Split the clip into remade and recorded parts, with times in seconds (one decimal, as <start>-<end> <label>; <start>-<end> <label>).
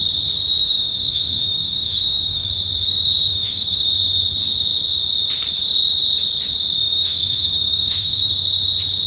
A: 0.0-0.6 recorded; 0.6-2.5 remade; 2.5-3.3 recorded; 3.3-3.9 remade; 3.9-6.8 recorded; 6.8-8.3 remade; 8.3-9.1 recorded